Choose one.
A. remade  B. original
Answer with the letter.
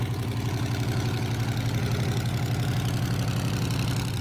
B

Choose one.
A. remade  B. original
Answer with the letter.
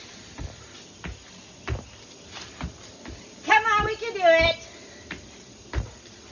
B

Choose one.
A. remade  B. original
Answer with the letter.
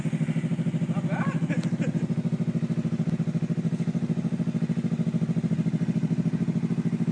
B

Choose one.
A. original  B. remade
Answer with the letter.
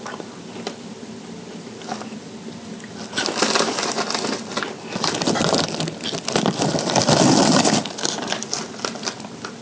A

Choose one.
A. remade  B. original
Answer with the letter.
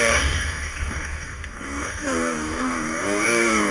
A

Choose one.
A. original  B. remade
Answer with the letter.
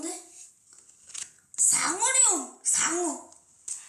A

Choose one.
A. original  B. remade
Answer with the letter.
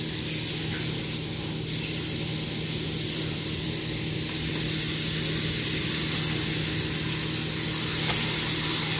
A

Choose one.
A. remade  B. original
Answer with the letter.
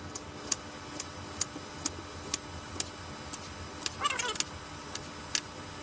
B